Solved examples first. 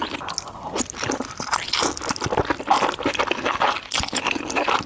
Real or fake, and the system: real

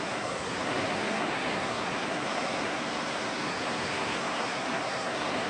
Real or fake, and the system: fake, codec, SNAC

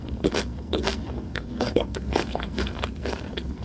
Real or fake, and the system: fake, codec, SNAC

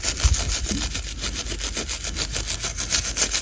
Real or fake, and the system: real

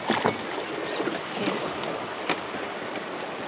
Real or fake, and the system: real